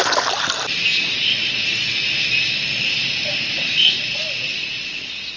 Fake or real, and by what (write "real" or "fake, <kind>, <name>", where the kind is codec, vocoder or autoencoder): real